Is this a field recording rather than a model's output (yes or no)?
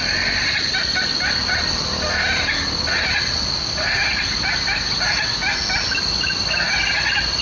yes